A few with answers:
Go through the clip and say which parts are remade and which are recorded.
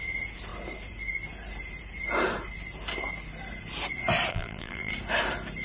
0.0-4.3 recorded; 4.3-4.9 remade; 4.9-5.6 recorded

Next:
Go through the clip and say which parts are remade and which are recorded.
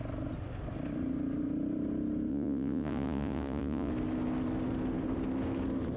0.0-2.3 recorded; 2.3-3.9 remade; 3.9-6.0 recorded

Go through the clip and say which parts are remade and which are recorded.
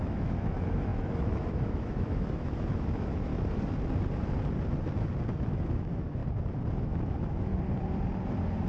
0.0-3.3 remade; 3.3-5.3 recorded; 5.3-6.2 remade; 6.2-6.8 recorded; 6.8-7.5 remade; 7.5-8.7 recorded